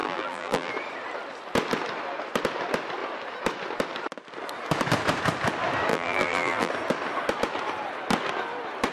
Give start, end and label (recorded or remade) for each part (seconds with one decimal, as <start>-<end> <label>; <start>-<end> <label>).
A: 0.0-0.7 remade; 0.7-5.9 recorded; 5.9-6.7 remade; 6.7-8.9 recorded